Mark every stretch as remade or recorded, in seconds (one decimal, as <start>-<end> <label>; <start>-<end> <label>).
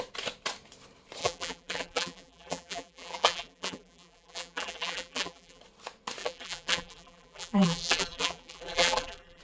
0.0-1.2 recorded; 1.2-5.6 remade; 5.6-6.2 recorded; 6.2-9.4 remade